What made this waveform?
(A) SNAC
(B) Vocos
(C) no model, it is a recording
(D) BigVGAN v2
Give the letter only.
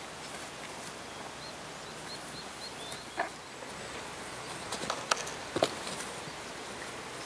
C